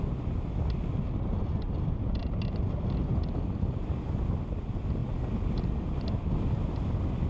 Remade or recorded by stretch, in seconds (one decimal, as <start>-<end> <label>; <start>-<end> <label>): 0.0-7.3 recorded